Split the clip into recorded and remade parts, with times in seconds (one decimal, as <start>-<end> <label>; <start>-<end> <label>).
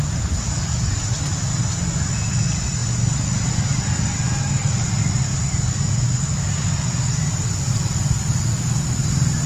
0.0-9.5 recorded